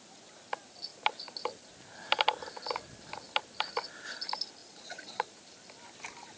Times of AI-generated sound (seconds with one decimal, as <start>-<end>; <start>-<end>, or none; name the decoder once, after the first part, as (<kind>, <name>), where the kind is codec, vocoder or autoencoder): 4.6-5.4 (vocoder, Vocos)